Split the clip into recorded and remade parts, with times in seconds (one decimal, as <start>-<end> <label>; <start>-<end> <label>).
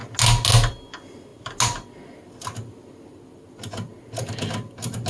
0.0-5.1 recorded